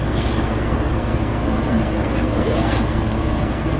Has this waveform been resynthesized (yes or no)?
yes